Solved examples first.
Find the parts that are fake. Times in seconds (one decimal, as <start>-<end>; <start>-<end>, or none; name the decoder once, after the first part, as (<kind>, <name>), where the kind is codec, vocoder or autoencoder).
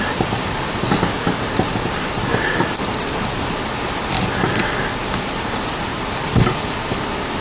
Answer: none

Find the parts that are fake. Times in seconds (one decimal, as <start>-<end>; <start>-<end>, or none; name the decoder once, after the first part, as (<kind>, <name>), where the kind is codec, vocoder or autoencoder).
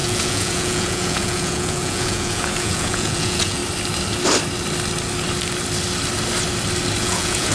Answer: 0.0-3.6 (vocoder, Vocos); 7.0-7.5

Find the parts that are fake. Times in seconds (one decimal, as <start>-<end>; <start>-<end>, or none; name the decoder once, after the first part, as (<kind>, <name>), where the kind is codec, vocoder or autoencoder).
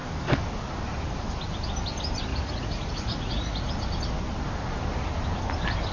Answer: 2.3-3.7 (vocoder, Vocos)